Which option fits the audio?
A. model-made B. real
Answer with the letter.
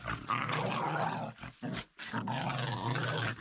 B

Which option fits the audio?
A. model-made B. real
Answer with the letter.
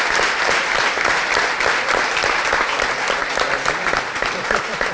A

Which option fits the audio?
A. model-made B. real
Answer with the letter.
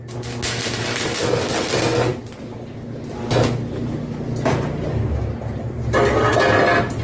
B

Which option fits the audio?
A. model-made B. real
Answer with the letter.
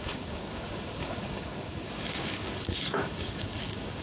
A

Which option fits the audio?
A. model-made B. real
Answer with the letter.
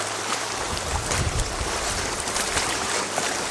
A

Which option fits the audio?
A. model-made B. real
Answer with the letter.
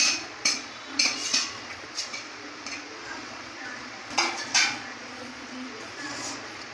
A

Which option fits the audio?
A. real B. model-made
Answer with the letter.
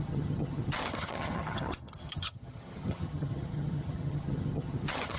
B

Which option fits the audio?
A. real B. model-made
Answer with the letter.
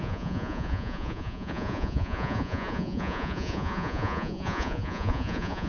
B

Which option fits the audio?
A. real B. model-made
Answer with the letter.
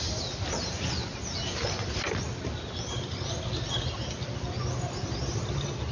A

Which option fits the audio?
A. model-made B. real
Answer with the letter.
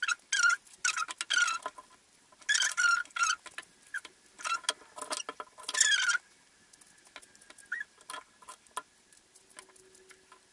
B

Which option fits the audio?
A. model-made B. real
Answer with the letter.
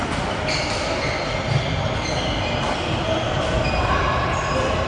B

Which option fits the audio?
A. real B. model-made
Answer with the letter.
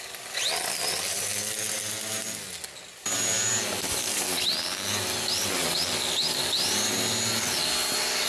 A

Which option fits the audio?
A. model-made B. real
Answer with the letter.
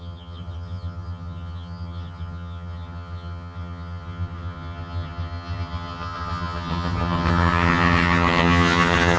A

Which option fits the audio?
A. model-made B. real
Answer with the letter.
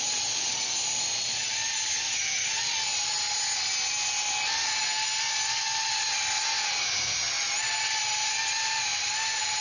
B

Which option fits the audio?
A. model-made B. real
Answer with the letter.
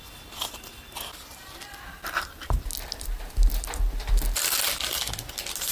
B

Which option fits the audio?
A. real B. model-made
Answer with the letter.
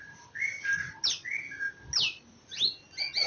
A